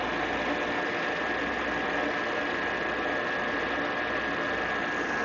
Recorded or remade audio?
recorded